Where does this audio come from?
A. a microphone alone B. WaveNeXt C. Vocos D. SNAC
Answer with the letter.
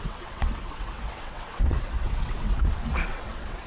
B